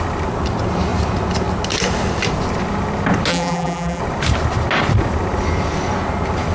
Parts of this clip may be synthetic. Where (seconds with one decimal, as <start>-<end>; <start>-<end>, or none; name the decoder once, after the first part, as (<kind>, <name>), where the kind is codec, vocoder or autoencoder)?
3.3-4.0 (vocoder, BigVGAN v2)